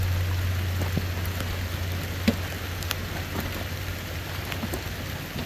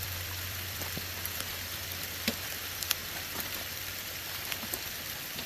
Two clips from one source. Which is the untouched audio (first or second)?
first